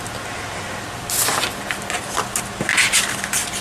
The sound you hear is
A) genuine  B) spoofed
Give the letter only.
A